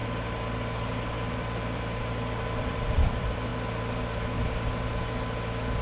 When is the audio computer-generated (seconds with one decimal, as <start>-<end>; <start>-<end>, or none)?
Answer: 1.2-3.5

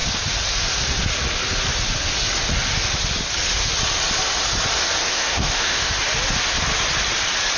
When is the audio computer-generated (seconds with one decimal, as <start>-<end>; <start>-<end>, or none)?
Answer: 5.0-5.9

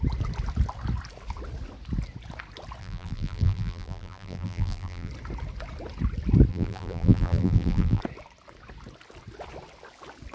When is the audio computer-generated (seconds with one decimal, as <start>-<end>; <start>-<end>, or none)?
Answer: 2.8-5.1; 6.5-8.0

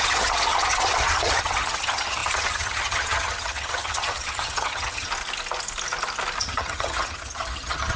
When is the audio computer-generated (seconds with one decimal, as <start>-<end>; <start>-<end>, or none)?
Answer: 0.0-5.1; 6.4-8.0

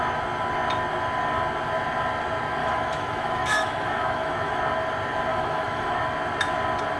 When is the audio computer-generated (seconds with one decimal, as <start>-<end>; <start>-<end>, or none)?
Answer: 2.6-4.6; 5.3-6.0

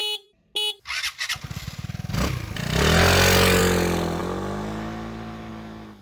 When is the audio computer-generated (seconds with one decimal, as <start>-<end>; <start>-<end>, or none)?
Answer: none

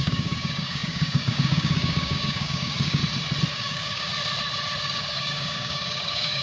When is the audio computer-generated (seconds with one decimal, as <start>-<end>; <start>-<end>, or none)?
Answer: 0.0-3.0; 3.5-4.1; 4.8-6.4